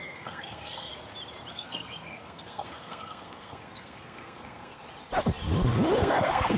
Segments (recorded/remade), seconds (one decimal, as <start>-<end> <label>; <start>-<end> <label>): 0.0-0.9 remade; 0.9-1.5 recorded; 1.5-4.8 remade; 4.8-6.0 recorded; 6.0-6.6 remade